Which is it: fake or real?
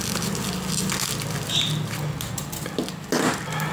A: real